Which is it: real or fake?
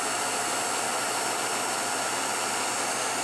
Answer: real